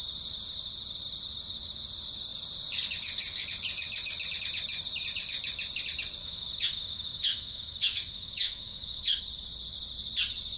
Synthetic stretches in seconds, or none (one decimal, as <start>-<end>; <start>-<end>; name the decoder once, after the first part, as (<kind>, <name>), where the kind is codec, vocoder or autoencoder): 6.2-9.2 (autoencoder, DAC-VAE)